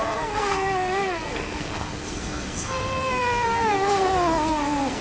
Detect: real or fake fake